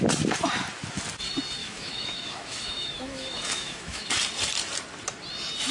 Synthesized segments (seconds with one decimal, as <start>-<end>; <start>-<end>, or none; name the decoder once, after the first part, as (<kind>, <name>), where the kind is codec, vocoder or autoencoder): 1.6-4.2 (autoencoder, DAC-VAE)